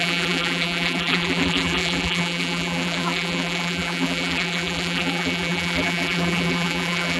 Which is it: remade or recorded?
remade